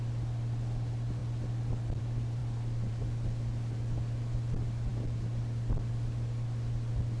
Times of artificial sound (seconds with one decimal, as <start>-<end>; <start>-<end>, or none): none